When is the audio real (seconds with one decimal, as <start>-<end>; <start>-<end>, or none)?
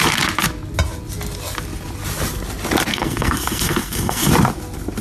0.0-2.9; 4.3-5.0